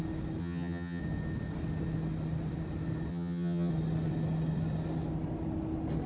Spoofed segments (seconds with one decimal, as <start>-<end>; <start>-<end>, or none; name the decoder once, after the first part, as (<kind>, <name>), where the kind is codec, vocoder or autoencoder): 0.4-1.0 (vocoder, HiFi-GAN); 3.1-3.7